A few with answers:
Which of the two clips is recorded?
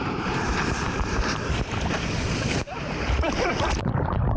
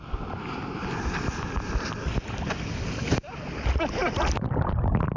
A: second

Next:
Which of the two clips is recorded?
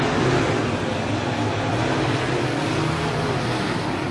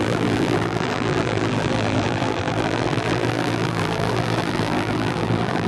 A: first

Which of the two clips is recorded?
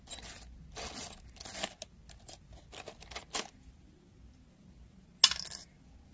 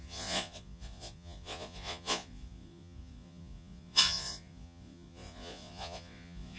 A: first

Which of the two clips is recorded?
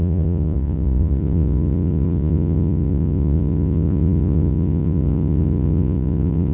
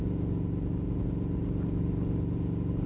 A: second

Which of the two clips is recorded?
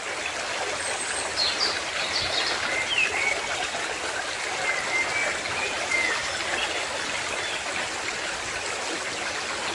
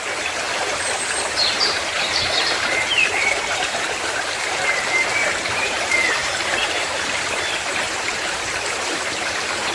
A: first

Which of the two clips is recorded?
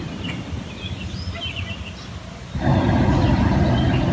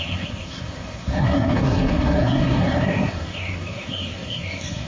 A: first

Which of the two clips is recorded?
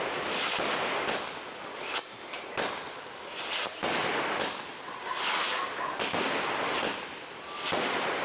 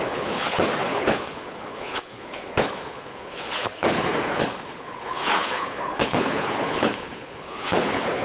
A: first